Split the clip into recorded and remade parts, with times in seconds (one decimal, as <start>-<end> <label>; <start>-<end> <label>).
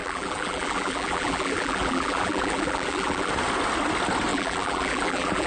0.0-3.3 remade; 3.3-4.3 recorded; 4.3-5.5 remade